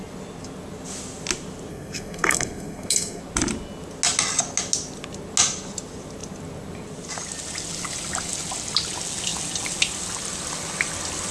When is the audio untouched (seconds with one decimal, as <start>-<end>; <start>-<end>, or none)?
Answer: 0.0-1.7; 3.2-11.3